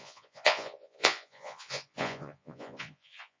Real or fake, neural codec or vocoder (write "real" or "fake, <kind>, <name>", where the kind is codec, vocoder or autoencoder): fake, vocoder, Vocos